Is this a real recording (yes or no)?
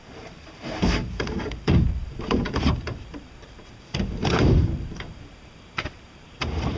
no